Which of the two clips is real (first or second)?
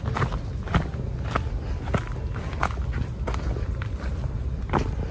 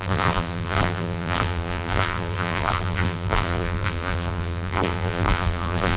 first